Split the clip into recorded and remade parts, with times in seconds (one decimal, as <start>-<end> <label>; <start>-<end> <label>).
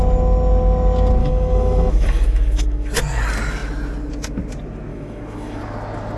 0.0-1.2 recorded; 1.2-3.0 remade; 3.0-4.9 recorded; 4.9-5.6 remade; 5.6-6.2 recorded